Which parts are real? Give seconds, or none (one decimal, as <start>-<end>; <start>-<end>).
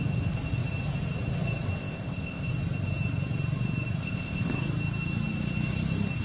0.0-1.8; 2.5-4.0; 4.5-6.2